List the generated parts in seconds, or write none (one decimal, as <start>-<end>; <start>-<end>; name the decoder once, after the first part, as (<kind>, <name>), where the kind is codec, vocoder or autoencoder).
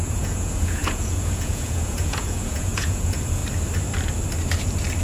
0.0-3.4 (vocoder, Vocos)